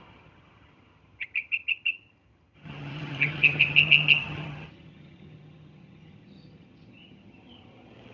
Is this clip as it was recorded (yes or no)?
no